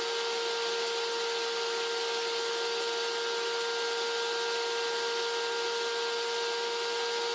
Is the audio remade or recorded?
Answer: recorded